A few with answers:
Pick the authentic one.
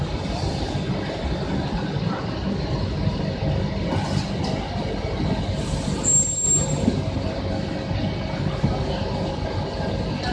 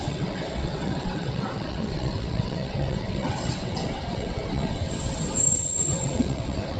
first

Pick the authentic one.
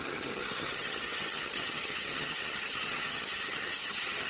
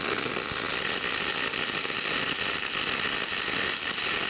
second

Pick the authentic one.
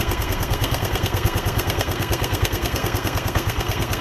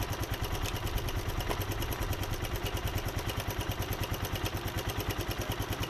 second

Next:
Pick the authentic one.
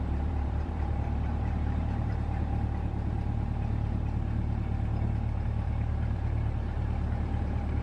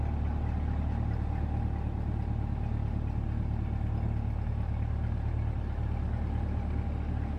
second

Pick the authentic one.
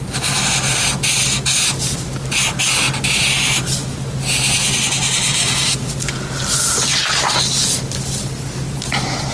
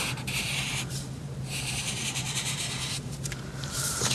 first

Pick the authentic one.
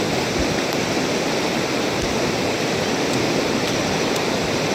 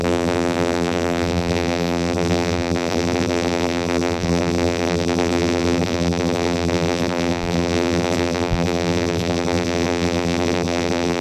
first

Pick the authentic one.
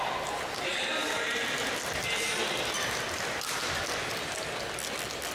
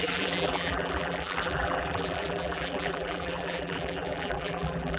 first